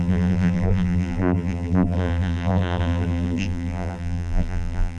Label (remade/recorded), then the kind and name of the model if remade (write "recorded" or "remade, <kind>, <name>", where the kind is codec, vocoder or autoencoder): remade, vocoder, BigVGAN v2